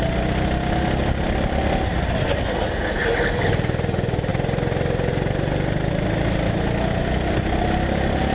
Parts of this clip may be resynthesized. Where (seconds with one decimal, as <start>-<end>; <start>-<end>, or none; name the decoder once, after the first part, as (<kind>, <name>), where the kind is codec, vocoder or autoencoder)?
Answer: none